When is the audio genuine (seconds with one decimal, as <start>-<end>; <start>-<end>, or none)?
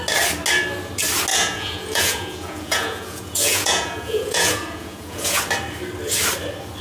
0.0-1.3; 5.4-6.8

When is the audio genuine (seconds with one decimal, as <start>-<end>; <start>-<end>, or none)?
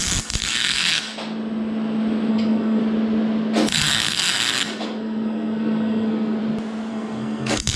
1.1-2.3; 2.8-3.7; 6.4-6.9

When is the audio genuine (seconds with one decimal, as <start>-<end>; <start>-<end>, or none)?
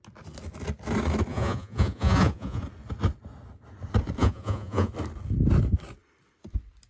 0.0-1.3; 2.6-4.2; 4.9-6.9